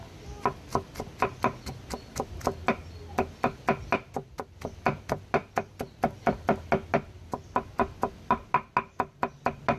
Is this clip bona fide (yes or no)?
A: yes